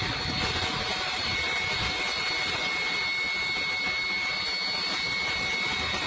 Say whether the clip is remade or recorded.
recorded